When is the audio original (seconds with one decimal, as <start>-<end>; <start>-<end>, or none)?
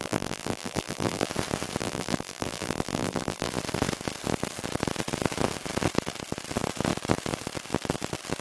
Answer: 1.3-1.8; 3.5-8.4